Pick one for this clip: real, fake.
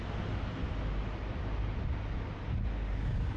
real